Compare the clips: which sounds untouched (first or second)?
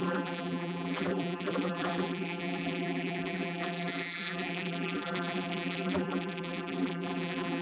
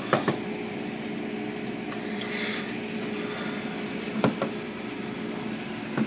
second